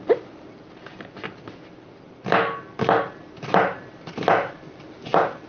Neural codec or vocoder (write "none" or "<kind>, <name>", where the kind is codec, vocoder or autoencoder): none